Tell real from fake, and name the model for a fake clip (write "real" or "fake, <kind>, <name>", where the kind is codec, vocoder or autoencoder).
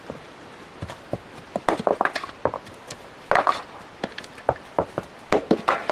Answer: real